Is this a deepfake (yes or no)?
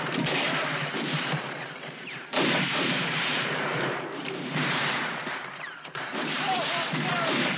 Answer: yes